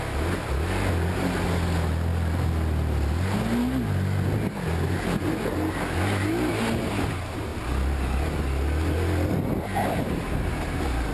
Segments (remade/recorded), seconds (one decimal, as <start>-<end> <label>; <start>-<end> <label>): 0.0-11.1 recorded